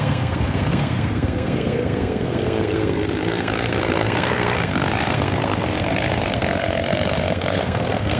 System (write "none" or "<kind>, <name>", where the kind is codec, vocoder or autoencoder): codec, SNAC